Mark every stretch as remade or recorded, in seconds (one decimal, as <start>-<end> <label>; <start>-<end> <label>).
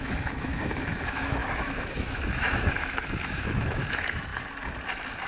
0.0-4.3 remade; 4.3-5.3 recorded